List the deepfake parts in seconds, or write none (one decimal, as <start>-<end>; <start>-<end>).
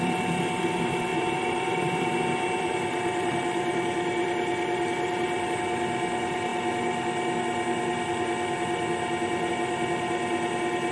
1.1-2.1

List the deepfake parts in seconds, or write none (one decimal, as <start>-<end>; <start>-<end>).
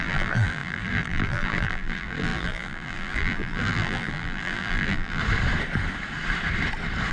0.0-5.2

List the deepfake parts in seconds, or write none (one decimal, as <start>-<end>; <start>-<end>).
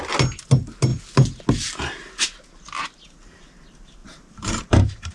4.0-5.1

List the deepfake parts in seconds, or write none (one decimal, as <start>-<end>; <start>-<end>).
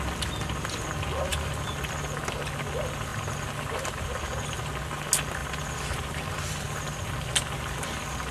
1.3-1.8; 3.1-4.1; 5.4-8.3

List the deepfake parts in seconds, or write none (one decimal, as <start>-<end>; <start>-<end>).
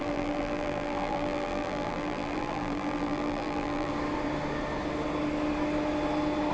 0.0-3.9